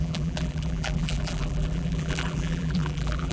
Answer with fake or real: fake